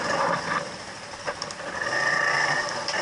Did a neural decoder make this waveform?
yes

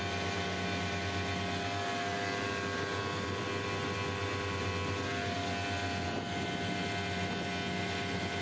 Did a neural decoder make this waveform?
no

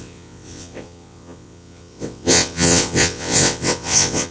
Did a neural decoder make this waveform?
yes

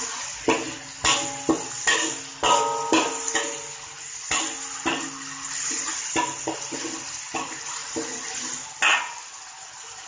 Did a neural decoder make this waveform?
no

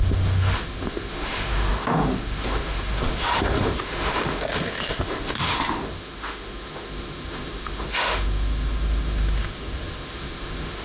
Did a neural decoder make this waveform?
yes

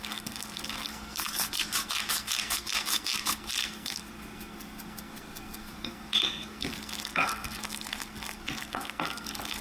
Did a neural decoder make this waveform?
yes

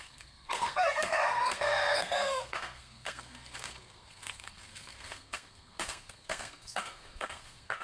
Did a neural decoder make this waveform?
yes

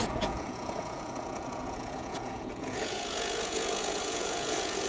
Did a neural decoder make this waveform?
yes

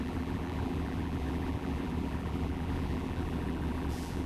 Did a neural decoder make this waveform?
yes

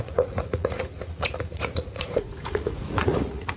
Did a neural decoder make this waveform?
yes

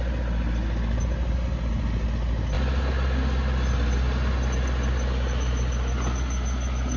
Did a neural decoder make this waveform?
no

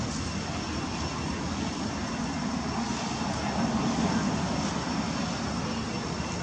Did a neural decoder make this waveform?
no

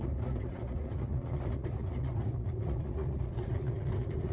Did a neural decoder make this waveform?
yes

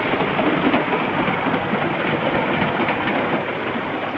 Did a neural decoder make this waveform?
no